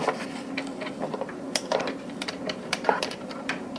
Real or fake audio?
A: fake